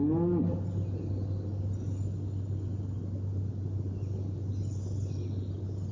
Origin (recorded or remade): recorded